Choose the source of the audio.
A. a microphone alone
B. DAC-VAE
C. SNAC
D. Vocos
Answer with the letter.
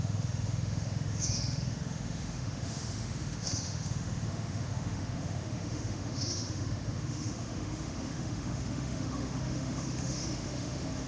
B